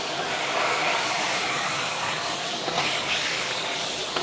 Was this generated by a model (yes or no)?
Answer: yes